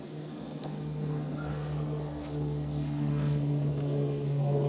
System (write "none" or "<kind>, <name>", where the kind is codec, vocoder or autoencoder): codec, SNAC